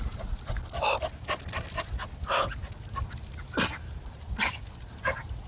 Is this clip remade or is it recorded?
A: recorded